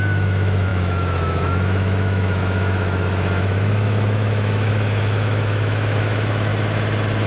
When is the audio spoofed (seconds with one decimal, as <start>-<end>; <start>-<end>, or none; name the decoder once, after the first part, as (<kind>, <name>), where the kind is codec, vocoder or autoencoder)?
0.0-6.5 (autoencoder, DAC-VAE)